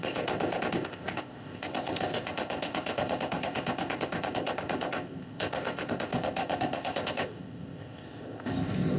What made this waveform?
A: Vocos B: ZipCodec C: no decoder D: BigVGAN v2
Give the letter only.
B